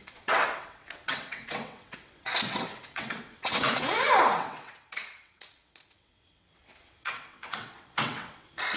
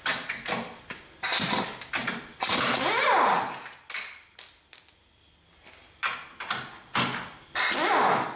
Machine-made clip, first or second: first